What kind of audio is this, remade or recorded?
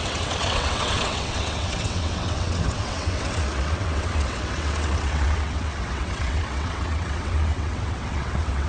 remade